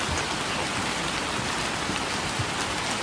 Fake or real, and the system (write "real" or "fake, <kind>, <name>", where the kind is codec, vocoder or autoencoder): real